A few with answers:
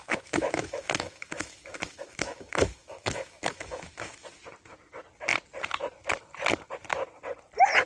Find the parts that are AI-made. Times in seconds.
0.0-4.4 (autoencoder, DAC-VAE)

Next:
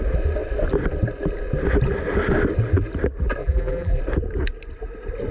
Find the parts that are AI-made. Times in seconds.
3.4-4.0 (vocoder, BigVGAN v2)

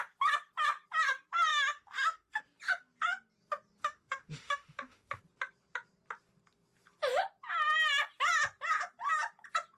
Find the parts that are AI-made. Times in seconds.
1.5-2.4 (autoencoder, DAC-VAE); 3.8-5.2

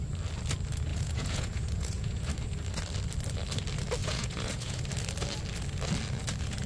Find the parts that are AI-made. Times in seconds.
0.9-2.3 (vocoder, Vocos); 4.0-4.8

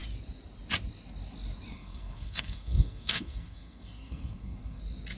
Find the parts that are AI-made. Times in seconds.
1.7-4.8 (codec, SNAC)

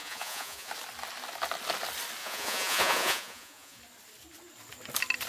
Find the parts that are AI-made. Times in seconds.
0.0-0.7 (vocoder, Vocos); 2.2-3.8

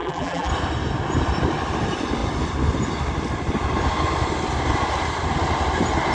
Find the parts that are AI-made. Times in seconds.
0.0-0.5 (vocoder, BigVGAN v2)

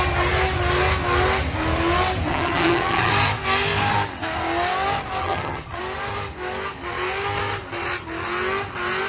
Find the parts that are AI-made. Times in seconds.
2.3-3.1 (vocoder, HiFi-GAN); 5.2-5.8